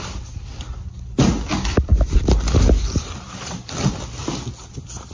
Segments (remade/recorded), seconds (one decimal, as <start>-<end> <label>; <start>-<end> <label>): 0.0-5.1 recorded